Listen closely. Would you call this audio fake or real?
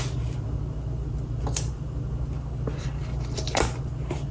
real